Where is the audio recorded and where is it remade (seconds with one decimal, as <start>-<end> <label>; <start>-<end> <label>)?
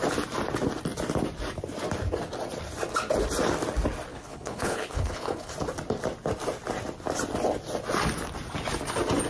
0.0-4.1 recorded; 4.1-5.5 remade; 5.5-9.3 recorded